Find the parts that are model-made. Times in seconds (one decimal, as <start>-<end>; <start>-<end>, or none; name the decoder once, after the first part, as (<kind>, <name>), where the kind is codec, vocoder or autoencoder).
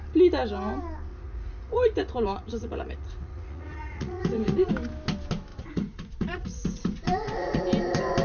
1.1-4.7 (vocoder, Vocos); 5.5-7.6